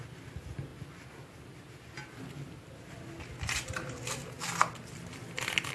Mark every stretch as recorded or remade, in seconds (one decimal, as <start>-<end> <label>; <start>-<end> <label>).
0.0-5.7 recorded